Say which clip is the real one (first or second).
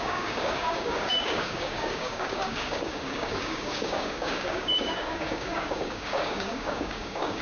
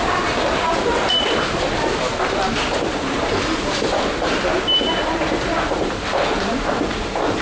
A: second